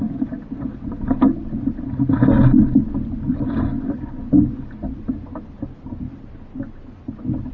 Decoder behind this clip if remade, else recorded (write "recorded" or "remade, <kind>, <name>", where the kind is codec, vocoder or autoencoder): recorded